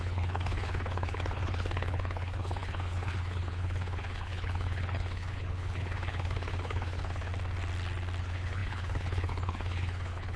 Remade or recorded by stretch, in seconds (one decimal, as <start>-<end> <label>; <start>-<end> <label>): 0.0-7.3 remade; 7.3-8.2 recorded; 8.2-10.4 remade